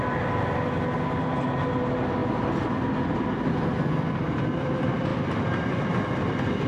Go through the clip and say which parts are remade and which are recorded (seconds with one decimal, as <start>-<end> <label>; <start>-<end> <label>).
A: 0.0-5.1 recorded; 5.1-5.7 remade; 5.7-6.7 recorded